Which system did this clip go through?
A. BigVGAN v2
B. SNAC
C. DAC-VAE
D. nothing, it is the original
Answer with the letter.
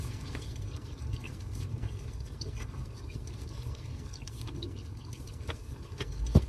B